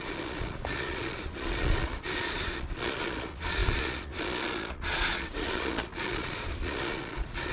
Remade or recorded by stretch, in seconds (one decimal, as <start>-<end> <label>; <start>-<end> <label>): 0.0-7.5 remade